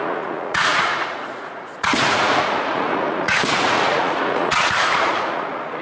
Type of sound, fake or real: fake